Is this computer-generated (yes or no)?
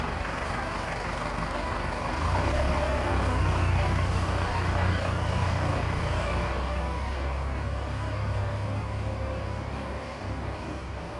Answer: yes